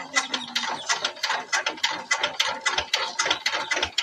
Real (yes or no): yes